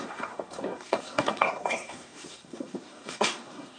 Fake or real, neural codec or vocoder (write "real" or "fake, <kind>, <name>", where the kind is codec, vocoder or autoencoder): fake, codec, SNAC